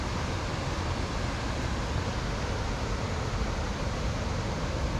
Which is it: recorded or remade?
recorded